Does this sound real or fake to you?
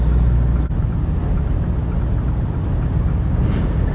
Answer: real